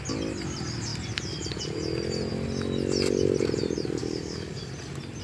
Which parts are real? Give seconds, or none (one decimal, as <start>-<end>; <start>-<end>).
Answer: 0.0-4.0; 4.7-5.2